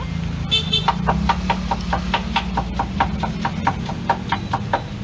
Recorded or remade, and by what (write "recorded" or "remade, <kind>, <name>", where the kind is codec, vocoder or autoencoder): recorded